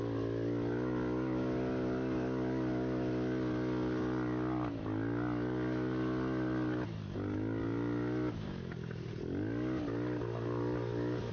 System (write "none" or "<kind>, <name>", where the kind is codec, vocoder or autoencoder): none